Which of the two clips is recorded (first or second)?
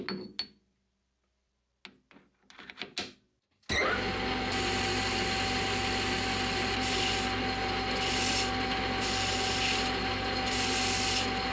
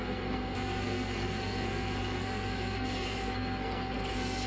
first